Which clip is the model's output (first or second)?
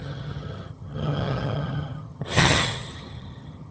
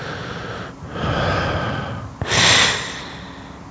first